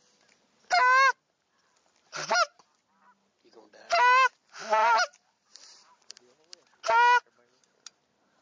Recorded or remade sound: recorded